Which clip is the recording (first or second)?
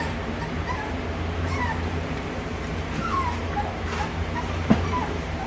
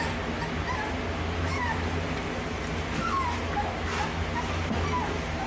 second